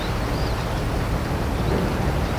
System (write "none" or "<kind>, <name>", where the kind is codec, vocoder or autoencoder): none